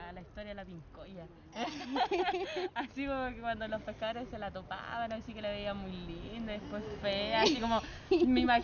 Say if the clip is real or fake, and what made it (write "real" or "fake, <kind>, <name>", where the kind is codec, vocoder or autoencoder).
real